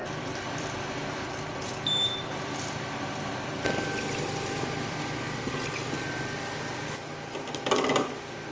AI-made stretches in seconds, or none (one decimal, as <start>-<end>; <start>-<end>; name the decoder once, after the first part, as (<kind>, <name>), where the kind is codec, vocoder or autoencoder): 0.0-5.0 (vocoder, BigVGAN v2)